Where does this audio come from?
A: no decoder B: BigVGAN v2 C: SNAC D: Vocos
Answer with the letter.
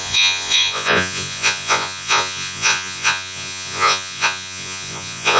D